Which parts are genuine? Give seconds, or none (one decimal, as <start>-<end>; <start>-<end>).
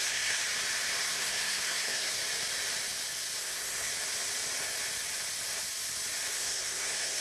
0.4-1.0; 2.2-3.4; 3.9-6.3